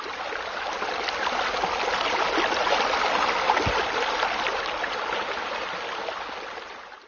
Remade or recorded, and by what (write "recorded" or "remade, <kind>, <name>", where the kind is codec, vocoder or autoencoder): recorded